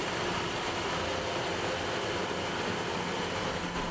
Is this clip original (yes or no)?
yes